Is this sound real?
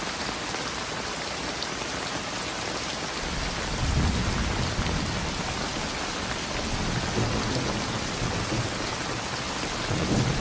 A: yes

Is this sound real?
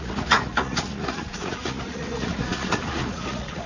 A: no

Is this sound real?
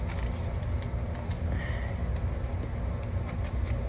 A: yes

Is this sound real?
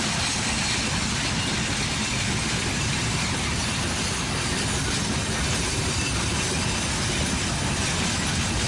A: yes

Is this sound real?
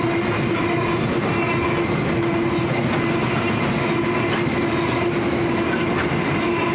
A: yes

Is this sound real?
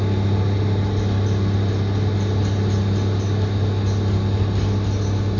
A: yes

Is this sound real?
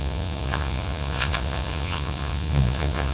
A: no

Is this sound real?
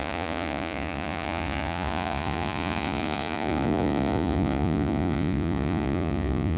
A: no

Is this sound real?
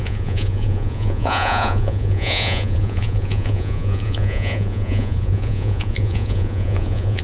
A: no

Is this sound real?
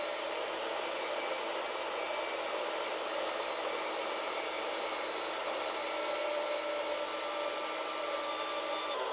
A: yes